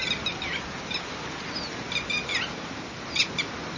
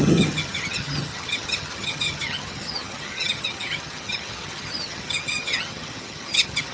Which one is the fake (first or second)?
second